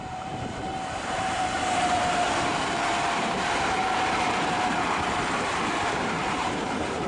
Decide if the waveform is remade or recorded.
remade